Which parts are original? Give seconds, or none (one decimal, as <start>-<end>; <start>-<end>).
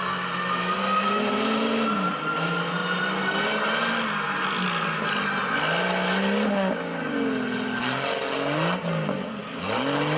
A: 0.0-10.2